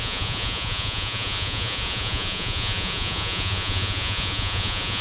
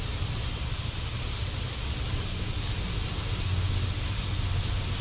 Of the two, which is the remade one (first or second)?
first